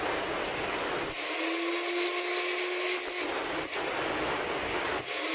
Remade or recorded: recorded